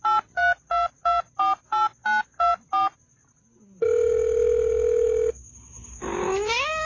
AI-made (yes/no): no